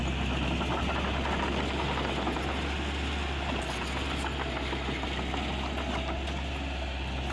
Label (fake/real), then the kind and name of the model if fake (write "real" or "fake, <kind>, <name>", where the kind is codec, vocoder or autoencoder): real